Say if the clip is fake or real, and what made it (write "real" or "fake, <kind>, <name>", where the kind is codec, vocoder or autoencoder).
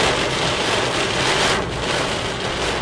real